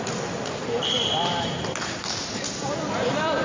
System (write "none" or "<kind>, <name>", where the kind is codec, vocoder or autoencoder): none